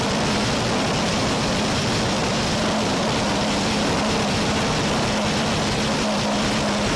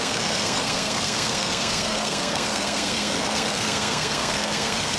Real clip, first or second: first